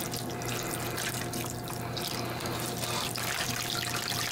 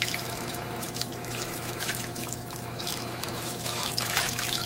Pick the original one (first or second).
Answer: first